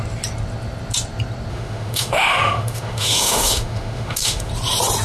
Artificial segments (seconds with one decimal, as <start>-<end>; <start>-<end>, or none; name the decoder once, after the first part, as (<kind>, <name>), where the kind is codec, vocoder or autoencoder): 1.5-4.5 (autoencoder, DAC-VAE)